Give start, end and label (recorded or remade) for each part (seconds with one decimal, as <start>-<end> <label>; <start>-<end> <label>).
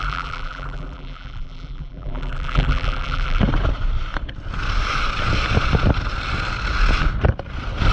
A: 0.0-3.4 remade; 3.4-7.9 recorded